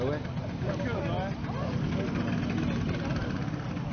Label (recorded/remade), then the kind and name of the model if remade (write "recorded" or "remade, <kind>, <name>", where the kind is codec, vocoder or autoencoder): recorded